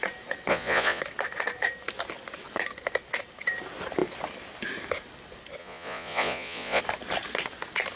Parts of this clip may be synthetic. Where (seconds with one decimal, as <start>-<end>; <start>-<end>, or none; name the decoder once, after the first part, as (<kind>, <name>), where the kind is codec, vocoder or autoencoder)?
0.5-1.0 (vocoder, Vocos); 5.6-6.8